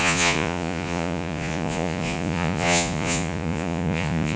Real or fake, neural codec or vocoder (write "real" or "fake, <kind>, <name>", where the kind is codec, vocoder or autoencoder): fake, vocoder, Vocos